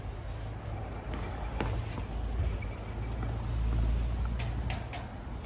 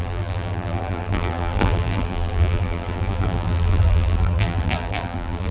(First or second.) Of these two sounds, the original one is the first